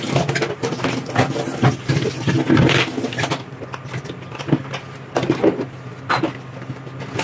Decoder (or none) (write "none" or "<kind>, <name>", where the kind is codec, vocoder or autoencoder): none